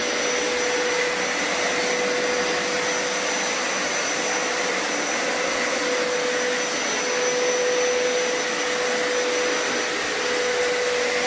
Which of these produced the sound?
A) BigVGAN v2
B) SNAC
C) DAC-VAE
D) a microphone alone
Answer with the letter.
D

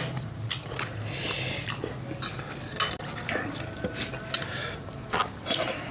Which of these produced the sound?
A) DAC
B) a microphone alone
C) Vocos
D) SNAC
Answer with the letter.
B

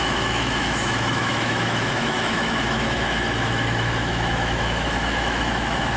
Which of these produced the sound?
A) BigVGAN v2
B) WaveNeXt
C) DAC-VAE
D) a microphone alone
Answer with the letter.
C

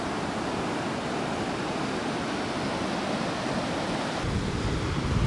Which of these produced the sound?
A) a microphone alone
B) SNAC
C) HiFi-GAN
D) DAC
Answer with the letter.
A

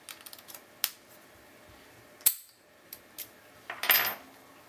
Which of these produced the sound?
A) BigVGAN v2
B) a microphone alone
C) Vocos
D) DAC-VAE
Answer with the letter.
B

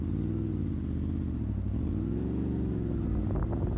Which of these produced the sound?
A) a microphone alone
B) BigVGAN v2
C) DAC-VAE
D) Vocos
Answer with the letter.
A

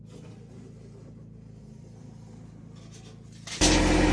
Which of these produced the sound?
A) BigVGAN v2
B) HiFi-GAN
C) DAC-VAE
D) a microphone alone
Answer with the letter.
D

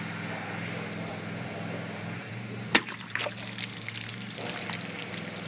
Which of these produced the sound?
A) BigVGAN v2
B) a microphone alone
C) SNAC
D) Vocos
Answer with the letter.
B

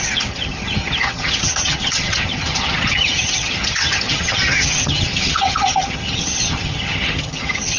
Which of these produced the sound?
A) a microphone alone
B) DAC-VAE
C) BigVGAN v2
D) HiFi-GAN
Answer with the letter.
D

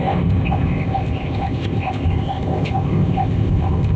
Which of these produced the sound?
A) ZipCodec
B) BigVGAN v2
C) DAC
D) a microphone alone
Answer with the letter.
A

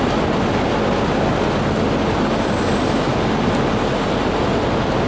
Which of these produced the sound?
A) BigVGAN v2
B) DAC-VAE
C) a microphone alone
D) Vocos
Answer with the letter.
C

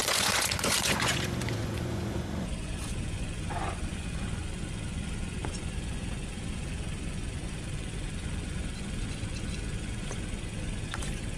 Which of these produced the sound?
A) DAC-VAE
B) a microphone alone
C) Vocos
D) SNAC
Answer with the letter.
C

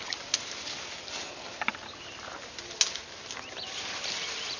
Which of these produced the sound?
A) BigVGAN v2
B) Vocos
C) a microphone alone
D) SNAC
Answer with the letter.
C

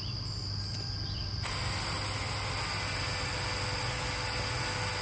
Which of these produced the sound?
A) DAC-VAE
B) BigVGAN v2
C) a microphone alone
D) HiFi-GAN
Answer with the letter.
C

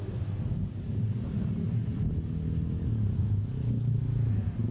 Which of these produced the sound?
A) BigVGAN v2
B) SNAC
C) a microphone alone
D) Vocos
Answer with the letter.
C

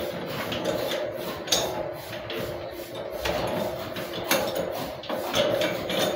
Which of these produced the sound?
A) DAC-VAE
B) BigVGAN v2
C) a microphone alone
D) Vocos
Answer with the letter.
C